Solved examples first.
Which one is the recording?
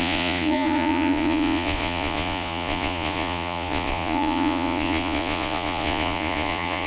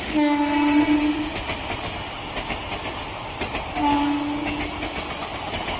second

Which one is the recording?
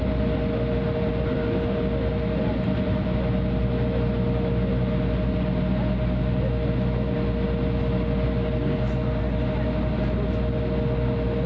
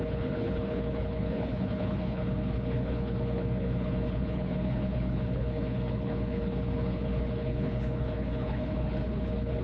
first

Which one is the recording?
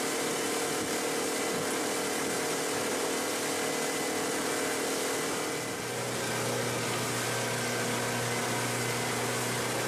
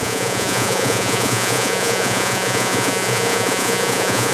first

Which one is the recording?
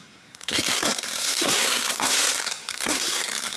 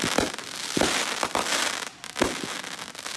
second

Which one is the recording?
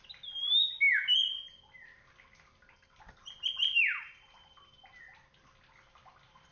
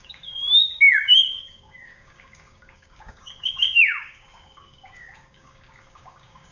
first